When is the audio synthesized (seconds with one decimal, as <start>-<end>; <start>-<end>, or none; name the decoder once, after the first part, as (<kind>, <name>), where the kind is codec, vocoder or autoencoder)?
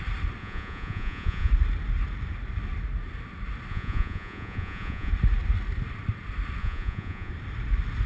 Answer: 0.4-1.5 (vocoder, Vocos); 3.7-5.1; 6.6-7.3